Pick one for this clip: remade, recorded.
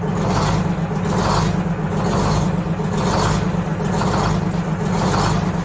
recorded